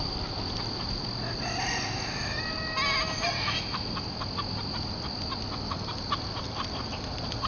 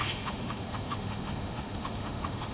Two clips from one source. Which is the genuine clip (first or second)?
first